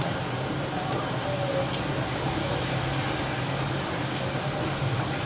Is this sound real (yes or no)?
yes